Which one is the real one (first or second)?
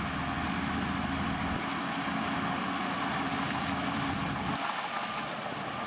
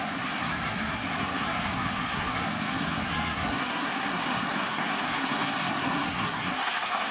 first